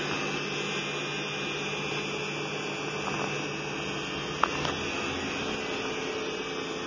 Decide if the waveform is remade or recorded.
recorded